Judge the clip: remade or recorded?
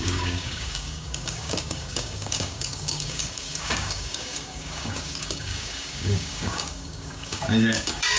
remade